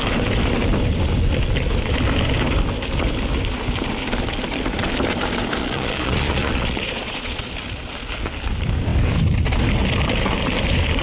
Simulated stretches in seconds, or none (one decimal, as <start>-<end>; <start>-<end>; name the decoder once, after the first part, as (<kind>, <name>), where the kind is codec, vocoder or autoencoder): 5.6-7.5 (vocoder, Vocos)